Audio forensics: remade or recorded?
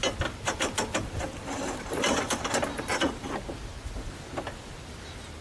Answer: recorded